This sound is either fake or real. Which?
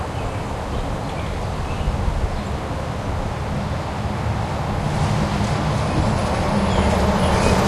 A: real